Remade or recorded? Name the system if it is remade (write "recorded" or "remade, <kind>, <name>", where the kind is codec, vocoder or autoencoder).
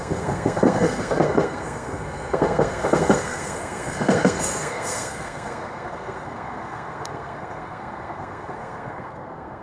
remade, codec, SNAC